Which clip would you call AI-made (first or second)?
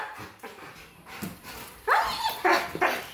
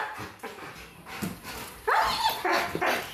first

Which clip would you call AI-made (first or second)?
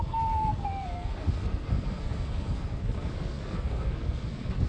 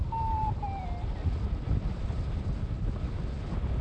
first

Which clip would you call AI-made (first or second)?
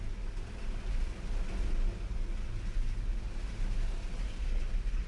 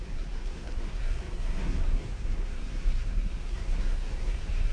second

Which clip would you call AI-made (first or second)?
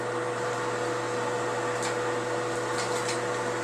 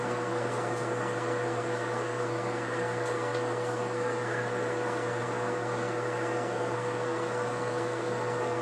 second